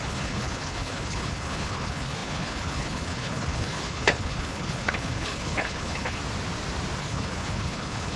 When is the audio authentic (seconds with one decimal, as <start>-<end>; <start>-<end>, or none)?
6.2-7.0